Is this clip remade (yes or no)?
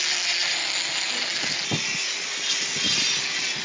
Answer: no